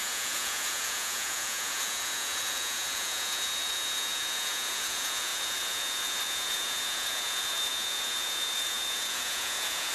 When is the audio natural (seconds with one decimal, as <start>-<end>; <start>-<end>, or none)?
none